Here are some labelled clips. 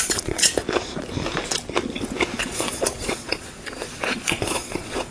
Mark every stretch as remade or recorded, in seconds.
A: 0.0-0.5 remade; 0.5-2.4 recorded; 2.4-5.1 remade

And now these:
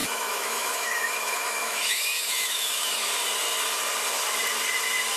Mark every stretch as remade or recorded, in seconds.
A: 0.0-3.1 remade; 3.1-5.2 recorded

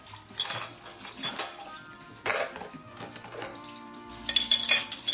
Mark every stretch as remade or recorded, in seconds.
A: 0.0-3.5 recorded; 3.5-4.2 remade; 4.2-5.1 recorded

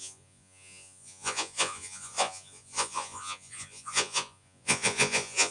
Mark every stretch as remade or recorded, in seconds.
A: 0.0-5.5 remade

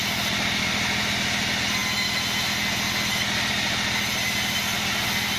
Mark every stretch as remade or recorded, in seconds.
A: 0.0-5.4 recorded

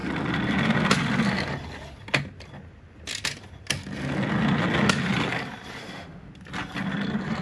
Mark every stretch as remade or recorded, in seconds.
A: 0.0-5.8 recorded; 5.8-6.3 remade; 6.3-7.4 recorded

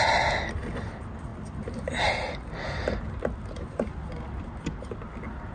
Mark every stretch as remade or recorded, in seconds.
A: 0.0-5.5 recorded

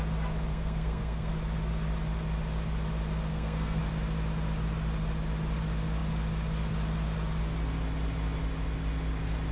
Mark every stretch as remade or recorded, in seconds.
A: 0.0-0.5 recorded; 0.5-1.3 remade; 1.3-3.3 recorded; 3.3-3.8 remade; 3.8-9.5 recorded